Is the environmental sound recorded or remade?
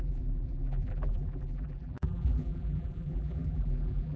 remade